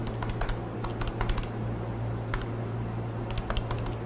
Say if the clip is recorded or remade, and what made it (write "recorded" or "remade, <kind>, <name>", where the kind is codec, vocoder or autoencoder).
recorded